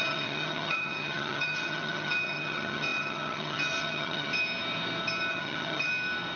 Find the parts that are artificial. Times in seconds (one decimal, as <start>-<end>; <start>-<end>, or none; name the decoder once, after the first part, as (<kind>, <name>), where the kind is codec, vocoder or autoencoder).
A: 0.0-4.3 (vocoder, HiFi-GAN); 5.3-5.9